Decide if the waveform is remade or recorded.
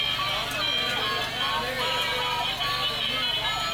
recorded